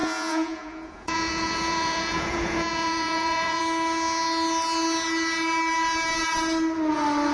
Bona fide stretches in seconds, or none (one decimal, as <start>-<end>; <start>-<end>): 3.6-7.3